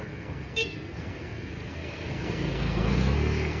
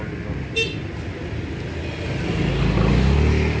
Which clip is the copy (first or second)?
first